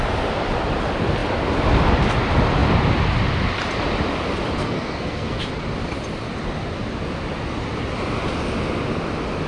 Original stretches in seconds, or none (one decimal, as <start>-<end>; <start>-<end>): 0.0-4.6; 5.4-9.5